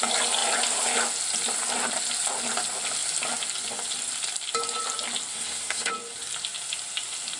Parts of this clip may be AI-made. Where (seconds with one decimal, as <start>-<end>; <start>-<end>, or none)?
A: 5.3-5.9